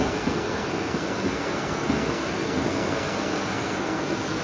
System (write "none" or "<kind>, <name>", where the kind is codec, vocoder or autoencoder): codec, SNAC